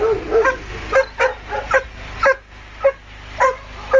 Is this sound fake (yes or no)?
no